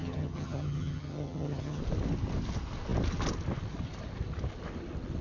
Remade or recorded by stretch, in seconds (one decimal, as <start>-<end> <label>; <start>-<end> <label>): 0.0-1.8 remade; 1.8-5.2 recorded